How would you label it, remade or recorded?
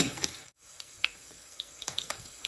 remade